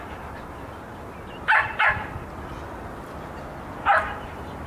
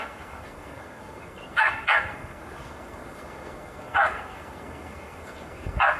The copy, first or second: second